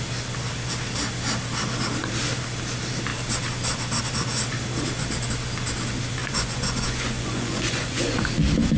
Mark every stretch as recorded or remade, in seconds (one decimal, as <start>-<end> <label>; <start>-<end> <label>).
0.0-6.2 recorded; 6.2-8.2 remade; 8.2-8.8 recorded